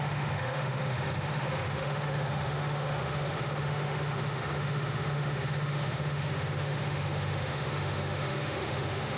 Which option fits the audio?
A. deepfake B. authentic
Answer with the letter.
A